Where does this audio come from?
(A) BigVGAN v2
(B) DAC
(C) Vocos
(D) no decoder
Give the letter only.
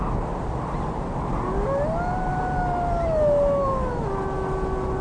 D